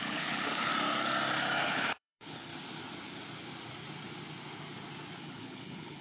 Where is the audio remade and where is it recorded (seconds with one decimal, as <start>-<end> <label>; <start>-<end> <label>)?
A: 0.0-0.7 remade; 0.7-1.6 recorded; 1.6-2.5 remade; 2.5-5.2 recorded; 5.2-6.0 remade